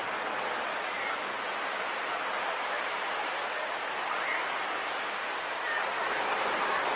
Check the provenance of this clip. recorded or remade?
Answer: recorded